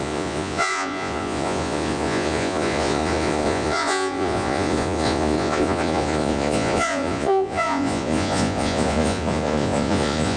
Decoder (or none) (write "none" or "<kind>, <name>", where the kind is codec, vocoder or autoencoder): vocoder, Vocos